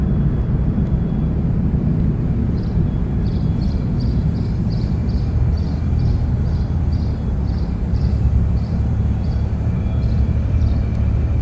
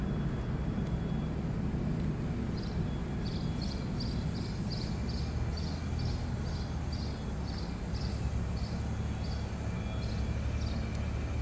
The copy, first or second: first